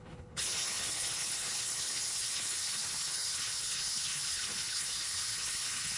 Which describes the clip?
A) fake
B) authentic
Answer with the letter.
A